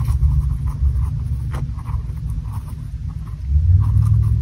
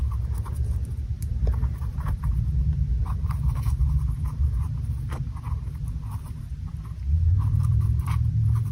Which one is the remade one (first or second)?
second